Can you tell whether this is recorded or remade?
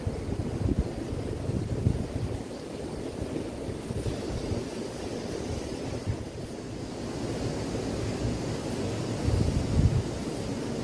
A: recorded